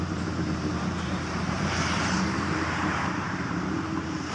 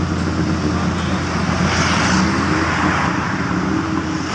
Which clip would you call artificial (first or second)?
first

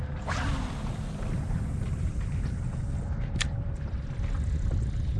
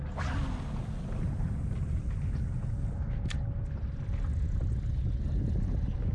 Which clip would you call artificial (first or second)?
first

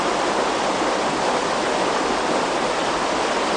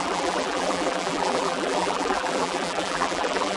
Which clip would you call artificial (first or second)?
second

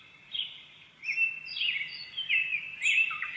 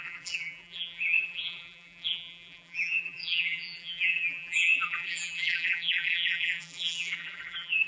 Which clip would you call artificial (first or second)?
second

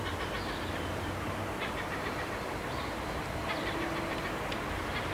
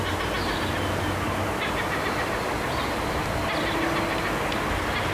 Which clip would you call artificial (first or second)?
first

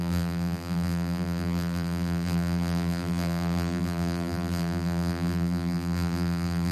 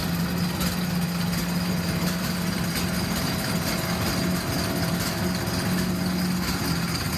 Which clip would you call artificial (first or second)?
first